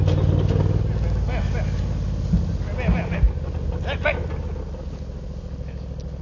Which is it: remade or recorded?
recorded